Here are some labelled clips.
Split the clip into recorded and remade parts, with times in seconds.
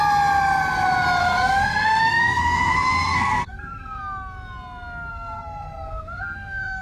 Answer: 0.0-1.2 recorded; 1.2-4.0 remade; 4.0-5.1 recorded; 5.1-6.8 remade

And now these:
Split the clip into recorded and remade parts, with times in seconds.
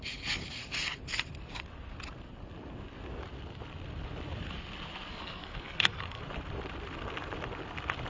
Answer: 0.0-5.1 recorded; 5.1-6.2 remade; 6.2-8.1 recorded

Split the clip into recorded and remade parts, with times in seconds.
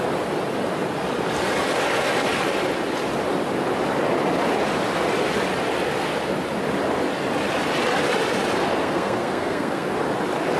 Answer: 0.0-8.8 recorded; 8.8-9.9 remade; 9.9-10.6 recorded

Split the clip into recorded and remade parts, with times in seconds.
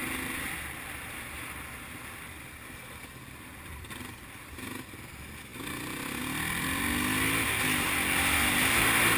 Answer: 0.0-9.2 recorded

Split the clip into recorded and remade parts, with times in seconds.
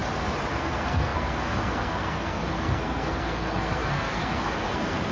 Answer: 0.0-0.5 recorded; 0.5-5.1 remade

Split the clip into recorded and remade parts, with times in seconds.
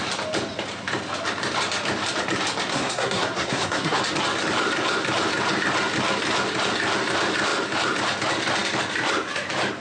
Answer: 0.0-2.7 recorded; 2.7-4.0 remade; 4.0-9.8 recorded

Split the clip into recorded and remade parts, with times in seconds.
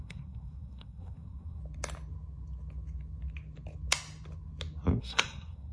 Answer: 0.0-1.6 remade; 1.6-5.0 recorded; 5.0-5.7 remade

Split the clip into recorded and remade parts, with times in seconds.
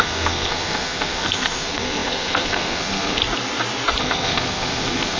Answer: 0.0-3.2 remade; 3.2-4.0 recorded; 4.0-5.2 remade